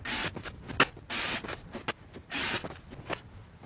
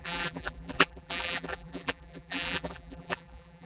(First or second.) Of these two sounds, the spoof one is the second